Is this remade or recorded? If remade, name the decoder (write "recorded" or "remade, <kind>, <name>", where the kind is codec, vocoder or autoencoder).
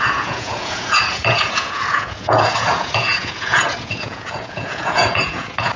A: remade, vocoder, Vocos